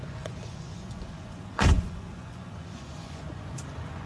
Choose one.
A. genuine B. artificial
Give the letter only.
B